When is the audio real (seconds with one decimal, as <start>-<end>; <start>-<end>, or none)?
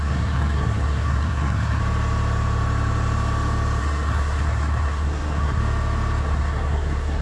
1.8-3.8; 5.6-6.2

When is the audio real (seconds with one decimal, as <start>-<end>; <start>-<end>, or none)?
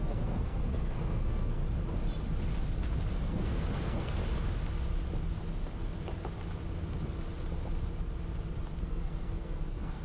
1.6-3.1; 4.2-8.8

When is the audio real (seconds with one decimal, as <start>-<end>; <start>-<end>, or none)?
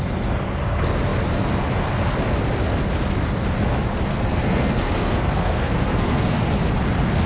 0.0-4.1; 6.4-7.3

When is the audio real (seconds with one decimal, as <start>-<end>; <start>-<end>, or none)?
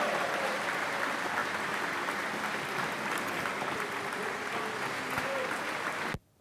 0.0-6.4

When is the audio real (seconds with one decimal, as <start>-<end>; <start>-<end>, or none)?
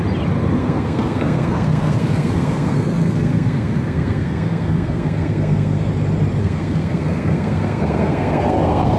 0.0-0.6; 5.9-6.4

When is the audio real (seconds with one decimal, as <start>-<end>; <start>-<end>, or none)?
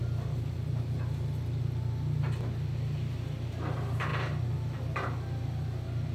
0.0-6.1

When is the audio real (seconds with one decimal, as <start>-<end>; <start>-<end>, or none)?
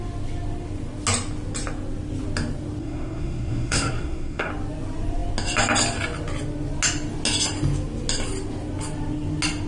0.0-2.8; 4.5-9.7